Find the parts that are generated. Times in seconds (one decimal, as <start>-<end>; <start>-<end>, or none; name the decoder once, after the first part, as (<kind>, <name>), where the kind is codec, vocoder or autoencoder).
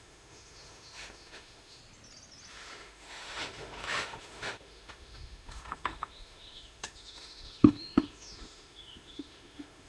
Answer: 0.0-1.8 (autoencoder, DAC-VAE); 2.5-9.9